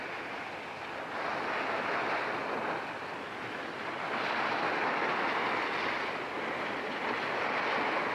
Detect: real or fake real